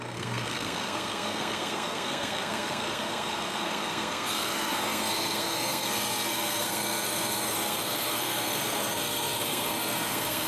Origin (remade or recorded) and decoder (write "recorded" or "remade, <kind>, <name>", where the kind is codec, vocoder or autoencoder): remade, codec, SNAC